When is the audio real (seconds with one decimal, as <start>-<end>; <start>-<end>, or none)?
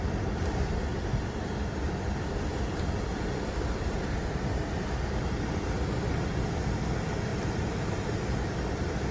0.0-7.3; 8.6-9.1